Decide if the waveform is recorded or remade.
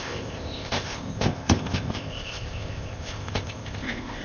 remade